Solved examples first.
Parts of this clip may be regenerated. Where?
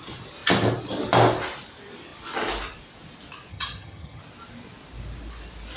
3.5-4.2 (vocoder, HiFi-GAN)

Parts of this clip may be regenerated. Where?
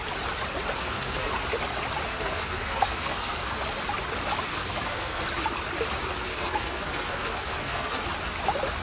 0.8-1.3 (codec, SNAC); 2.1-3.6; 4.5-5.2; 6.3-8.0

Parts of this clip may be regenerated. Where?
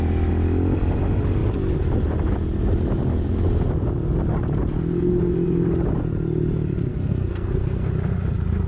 6.9-7.9 (codec, SNAC)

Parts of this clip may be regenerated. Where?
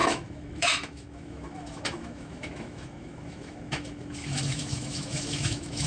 0.0-5.9 (autoencoder, DAC-VAE)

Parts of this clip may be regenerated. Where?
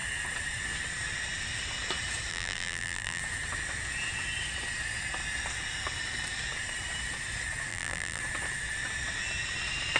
2.3-3.2 (vocoder, BigVGAN v2); 7.7-8.2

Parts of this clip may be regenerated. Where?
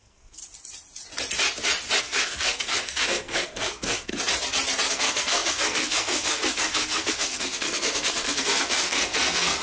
0.0-0.4 (codec, SNAC); 2.0-4.1; 4.9-9.6